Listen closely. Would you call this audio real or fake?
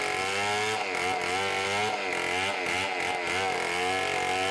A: real